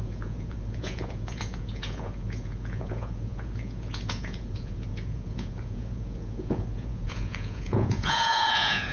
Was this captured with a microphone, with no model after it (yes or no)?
no